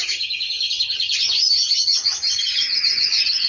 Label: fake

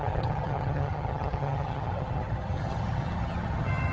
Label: fake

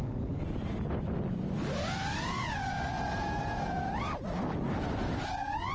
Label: real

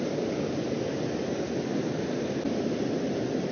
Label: real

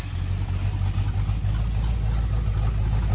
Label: real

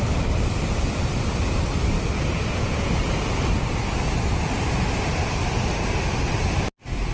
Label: real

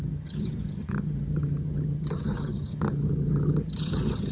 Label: fake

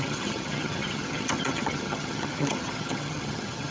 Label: fake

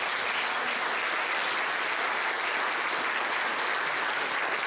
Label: real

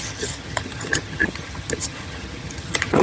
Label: fake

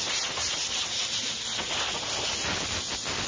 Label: real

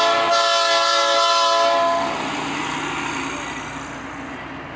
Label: real